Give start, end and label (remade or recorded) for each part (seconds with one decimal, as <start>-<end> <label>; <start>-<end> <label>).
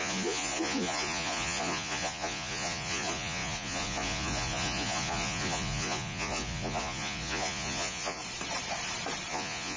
0.0-8.2 remade; 8.2-9.3 recorded; 9.3-9.8 remade